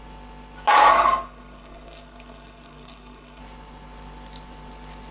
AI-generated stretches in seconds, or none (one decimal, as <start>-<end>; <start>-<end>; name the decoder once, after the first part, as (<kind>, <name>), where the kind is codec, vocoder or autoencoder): 0.9-3.4 (codec, SNAC)